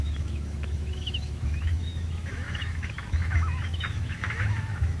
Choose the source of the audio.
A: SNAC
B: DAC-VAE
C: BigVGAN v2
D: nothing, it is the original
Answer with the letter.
B